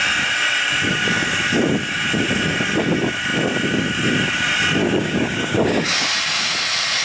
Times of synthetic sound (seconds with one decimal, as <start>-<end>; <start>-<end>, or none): 4.8-6.1